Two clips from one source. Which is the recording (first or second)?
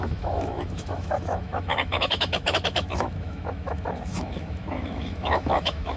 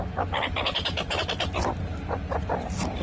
second